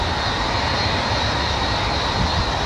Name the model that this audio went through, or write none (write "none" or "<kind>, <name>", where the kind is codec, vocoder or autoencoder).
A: none